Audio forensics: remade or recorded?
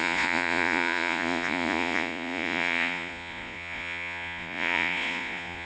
remade